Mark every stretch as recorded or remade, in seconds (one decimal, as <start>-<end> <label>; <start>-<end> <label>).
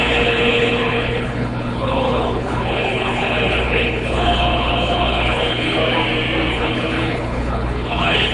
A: 0.0-5.8 remade; 5.8-6.5 recorded; 6.5-8.3 remade